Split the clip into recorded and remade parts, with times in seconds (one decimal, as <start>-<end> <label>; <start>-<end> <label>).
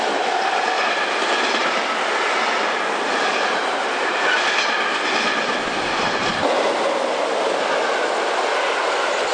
0.0-9.3 recorded